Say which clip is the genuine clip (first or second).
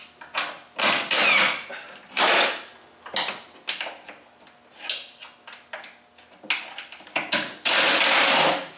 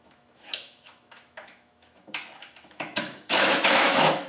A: first